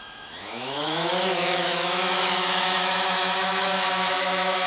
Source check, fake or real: fake